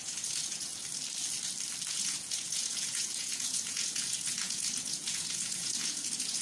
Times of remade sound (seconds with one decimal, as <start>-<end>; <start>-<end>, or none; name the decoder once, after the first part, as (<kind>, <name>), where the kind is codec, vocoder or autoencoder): 0.0-0.7 (vocoder, Vocos); 1.9-6.4